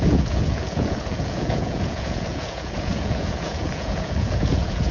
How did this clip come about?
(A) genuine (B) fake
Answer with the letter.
B